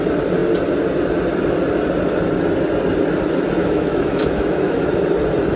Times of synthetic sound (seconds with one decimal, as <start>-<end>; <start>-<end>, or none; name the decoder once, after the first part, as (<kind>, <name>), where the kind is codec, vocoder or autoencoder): 3.6-4.9 (autoencoder, DAC-VAE)